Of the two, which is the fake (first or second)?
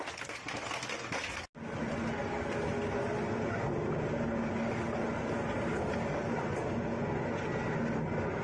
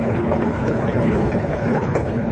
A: second